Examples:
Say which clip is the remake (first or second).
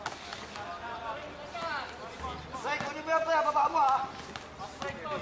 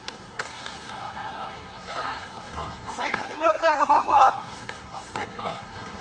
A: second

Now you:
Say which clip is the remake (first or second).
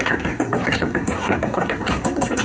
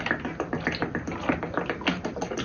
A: first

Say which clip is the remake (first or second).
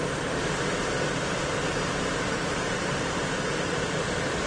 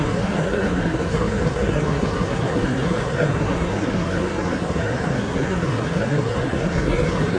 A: second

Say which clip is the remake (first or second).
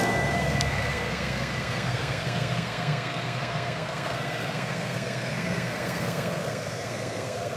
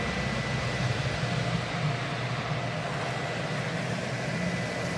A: first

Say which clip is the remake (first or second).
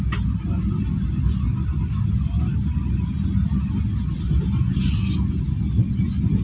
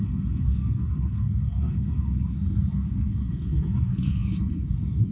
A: second